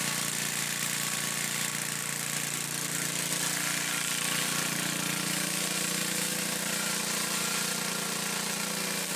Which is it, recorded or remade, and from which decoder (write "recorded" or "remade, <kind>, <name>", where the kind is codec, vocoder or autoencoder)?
recorded